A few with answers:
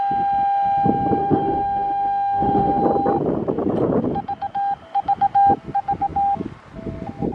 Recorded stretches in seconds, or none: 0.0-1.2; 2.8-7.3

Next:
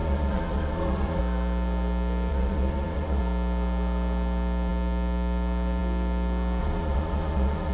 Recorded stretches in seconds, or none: 1.2-2.3; 3.2-6.6

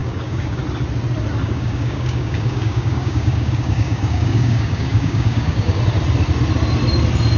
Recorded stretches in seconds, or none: 0.6-1.4; 5.8-7.4

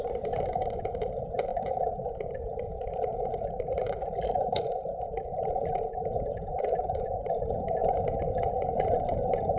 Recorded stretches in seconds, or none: 7.8-8.6